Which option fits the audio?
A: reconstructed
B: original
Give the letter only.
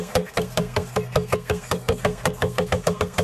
A